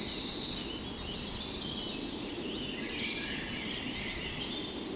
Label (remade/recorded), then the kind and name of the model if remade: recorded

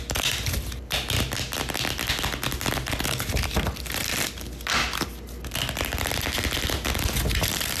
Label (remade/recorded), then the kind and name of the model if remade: recorded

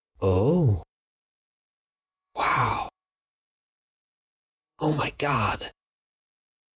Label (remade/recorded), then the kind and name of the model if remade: remade, vocoder, Vocos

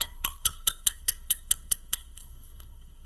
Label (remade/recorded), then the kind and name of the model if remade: remade, codec, SNAC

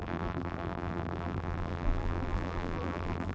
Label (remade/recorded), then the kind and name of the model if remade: remade, vocoder, BigVGAN v2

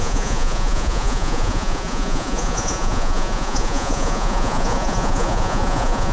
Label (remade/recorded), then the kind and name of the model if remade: remade, vocoder, Vocos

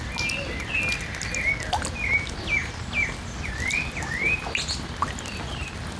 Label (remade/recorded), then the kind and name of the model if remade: recorded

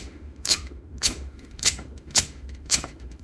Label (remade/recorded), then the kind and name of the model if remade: remade, autoencoder, DAC-VAE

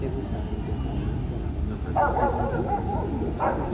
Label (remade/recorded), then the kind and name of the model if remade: recorded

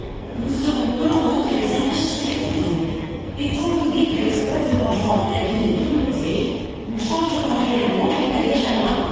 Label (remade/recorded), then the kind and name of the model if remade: remade, codec, SNAC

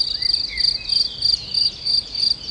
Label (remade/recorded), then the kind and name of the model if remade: recorded